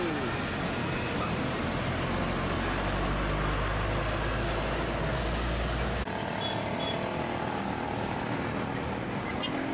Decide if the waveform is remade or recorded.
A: recorded